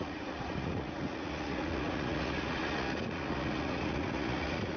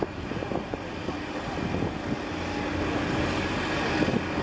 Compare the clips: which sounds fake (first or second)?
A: first